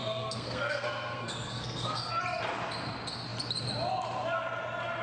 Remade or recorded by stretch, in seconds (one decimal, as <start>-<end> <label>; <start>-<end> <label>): 0.0-2.2 remade; 2.2-5.0 recorded